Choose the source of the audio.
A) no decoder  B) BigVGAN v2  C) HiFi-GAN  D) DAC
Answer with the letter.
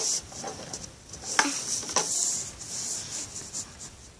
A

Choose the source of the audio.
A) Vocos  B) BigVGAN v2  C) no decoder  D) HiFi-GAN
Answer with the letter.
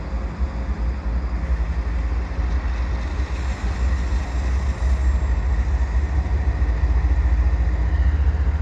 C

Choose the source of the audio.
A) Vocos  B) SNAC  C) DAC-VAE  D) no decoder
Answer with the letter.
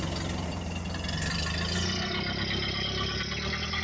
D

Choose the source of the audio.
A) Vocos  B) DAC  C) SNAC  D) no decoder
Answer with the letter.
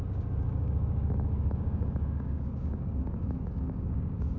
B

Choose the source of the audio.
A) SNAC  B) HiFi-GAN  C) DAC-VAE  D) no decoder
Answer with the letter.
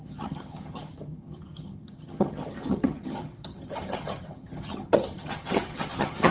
B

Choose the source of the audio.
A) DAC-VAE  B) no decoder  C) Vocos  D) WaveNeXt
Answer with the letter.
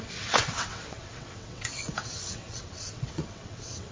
D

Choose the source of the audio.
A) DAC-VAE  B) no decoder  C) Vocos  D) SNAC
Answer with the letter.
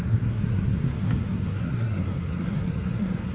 D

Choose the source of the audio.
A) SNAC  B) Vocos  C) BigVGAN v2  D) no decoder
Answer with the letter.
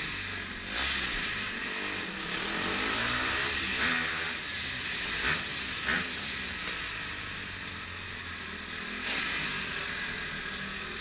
D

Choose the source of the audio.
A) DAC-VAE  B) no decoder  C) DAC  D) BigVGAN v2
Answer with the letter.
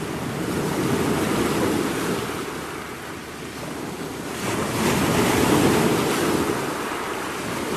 B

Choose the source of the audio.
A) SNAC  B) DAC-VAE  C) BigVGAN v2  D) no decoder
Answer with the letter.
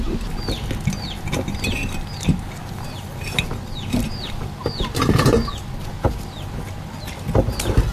D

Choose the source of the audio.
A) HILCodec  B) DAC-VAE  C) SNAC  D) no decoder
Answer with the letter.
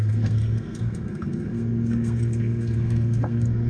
C